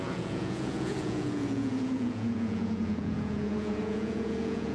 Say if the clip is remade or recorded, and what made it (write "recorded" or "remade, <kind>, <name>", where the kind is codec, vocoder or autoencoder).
remade, vocoder, Vocos